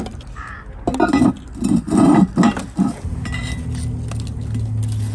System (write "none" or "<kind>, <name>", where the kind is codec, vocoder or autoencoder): none